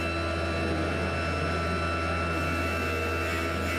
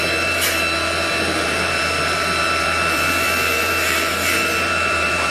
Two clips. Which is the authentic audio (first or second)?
first